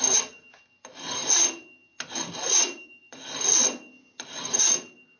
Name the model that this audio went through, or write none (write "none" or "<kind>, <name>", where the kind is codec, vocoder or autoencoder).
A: none